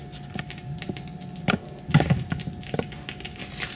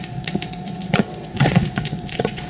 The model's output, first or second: second